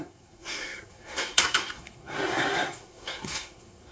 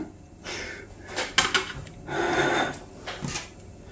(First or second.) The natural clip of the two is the second